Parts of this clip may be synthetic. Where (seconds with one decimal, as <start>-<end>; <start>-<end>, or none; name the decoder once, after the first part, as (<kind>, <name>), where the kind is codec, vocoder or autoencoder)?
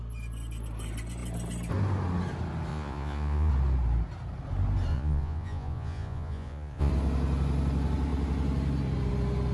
2.7-3.5 (vocoder, Vocos); 4.9-6.9